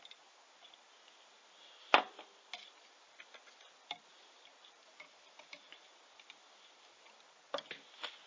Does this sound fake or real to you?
real